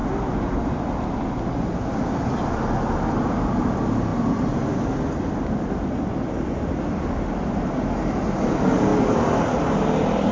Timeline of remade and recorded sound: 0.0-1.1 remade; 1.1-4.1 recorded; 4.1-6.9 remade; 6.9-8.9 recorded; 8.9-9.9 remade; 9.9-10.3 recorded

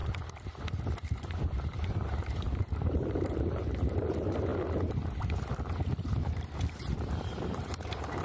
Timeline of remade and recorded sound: 0.0-4.5 remade; 4.5-6.2 recorded; 6.2-8.2 remade